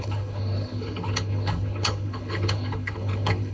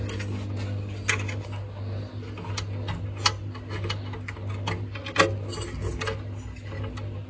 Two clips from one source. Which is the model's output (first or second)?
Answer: first